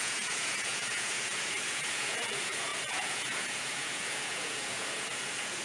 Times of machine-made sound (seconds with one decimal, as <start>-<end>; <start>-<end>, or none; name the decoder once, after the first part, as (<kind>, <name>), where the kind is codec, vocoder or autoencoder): 0.0-5.6 (vocoder, Vocos)